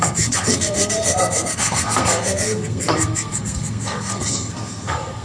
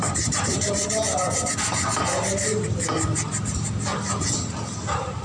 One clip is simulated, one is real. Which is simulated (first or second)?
first